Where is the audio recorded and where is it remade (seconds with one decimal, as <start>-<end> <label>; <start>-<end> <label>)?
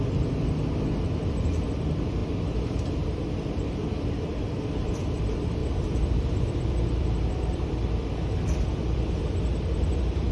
0.0-5.6 recorded; 5.6-10.3 remade